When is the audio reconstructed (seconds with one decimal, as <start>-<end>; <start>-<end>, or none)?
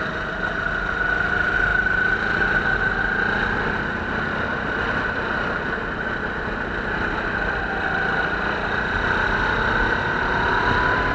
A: 0.0-1.7; 3.8-11.1